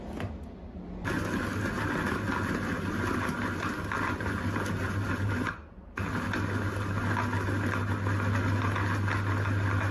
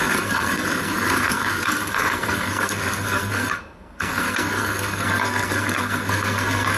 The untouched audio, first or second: first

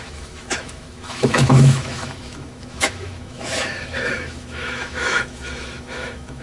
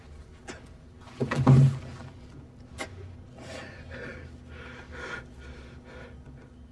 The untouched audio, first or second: second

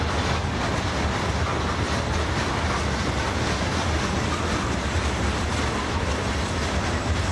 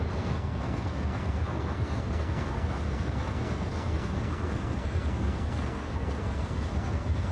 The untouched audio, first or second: first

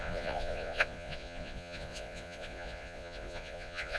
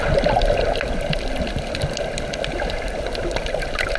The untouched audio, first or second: second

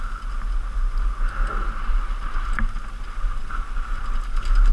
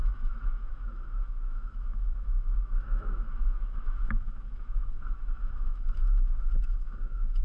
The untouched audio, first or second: first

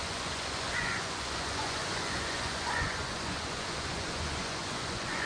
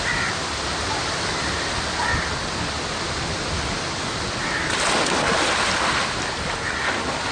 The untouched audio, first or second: second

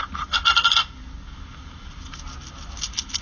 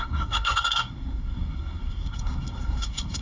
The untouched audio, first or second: first